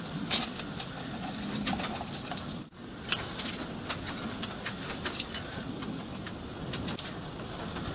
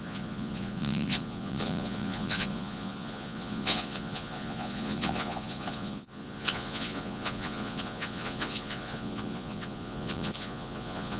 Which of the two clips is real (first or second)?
first